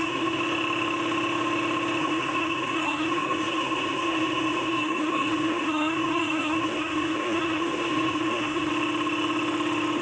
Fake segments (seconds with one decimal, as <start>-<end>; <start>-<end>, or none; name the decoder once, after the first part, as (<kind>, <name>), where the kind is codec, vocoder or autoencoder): 0.0-0.4 (codec, SNAC); 2.0-8.7